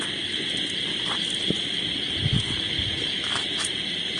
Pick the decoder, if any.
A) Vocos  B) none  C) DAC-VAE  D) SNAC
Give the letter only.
B